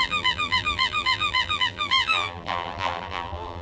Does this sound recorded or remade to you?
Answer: remade